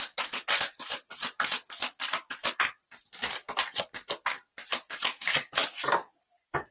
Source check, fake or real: real